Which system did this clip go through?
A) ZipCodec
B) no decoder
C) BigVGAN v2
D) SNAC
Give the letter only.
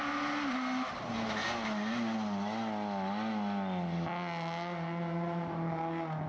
B